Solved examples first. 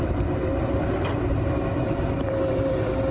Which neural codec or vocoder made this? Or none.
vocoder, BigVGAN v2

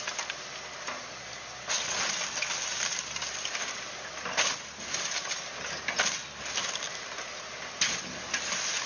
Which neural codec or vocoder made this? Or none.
none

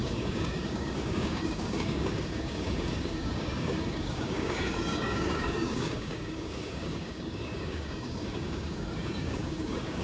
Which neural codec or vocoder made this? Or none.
codec, DAC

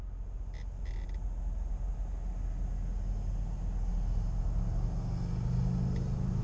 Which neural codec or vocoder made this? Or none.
none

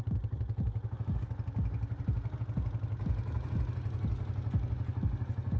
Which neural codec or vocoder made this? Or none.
none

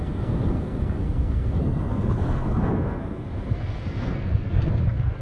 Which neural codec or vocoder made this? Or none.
codec, SNAC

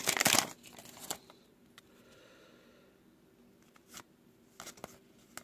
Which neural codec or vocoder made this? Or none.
none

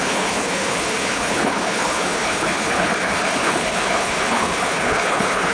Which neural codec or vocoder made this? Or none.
codec, HILCodec